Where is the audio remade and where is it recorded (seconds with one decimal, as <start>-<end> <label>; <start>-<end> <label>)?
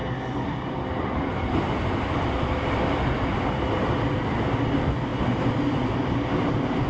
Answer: 0.0-6.9 recorded